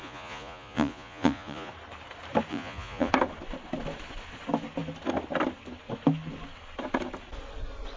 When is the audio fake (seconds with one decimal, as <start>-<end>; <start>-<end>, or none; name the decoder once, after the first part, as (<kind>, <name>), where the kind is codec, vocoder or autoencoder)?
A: 0.0-1.7 (vocoder, Vocos); 2.5-3.1